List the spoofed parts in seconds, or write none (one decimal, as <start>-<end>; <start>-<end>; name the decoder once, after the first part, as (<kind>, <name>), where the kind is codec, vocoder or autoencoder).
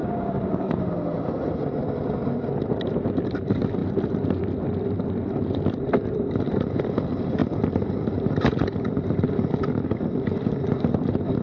0.0-0.9 (codec, DAC)